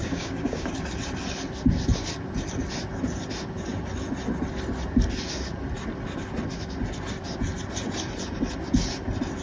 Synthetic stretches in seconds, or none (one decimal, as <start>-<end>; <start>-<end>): 0.0-0.7